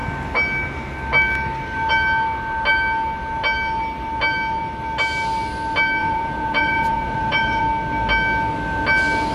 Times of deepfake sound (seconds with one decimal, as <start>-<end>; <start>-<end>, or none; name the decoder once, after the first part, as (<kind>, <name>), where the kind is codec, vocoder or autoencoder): 6.0-7.6 (vocoder, Vocos)